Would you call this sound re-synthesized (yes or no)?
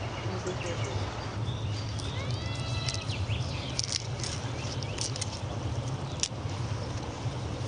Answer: no